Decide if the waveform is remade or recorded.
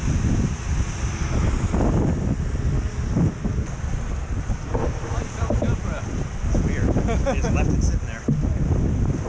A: recorded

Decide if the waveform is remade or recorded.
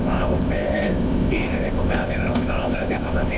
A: remade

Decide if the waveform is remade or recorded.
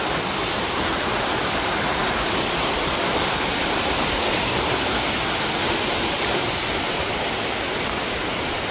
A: recorded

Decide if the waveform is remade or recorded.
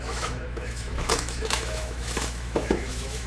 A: remade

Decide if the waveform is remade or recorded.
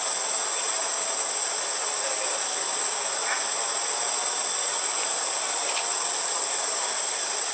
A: recorded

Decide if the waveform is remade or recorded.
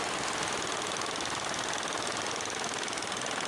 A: recorded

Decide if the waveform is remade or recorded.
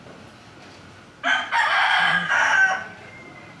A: remade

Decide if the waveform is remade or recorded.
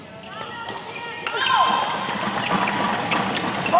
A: recorded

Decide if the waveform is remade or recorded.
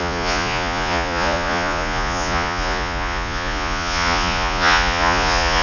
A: remade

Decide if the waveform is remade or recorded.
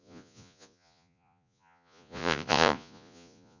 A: remade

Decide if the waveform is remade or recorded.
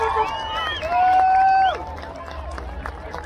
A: recorded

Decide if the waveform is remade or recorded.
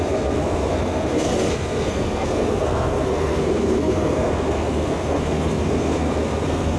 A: remade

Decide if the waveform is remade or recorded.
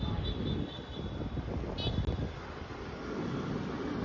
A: recorded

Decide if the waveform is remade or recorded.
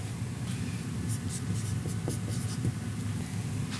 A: recorded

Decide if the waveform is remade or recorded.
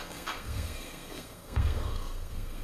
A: remade